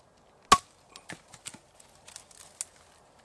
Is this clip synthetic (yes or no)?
no